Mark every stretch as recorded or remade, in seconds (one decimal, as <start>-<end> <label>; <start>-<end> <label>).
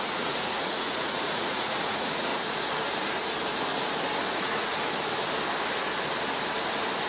0.0-2.3 remade; 2.3-4.3 recorded; 4.3-4.7 remade; 4.7-7.1 recorded